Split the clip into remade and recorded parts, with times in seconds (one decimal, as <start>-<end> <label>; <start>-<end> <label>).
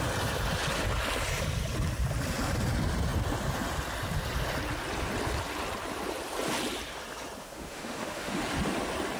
0.0-7.4 recorded; 7.4-8.4 remade; 8.4-9.2 recorded